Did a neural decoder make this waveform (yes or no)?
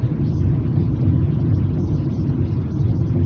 no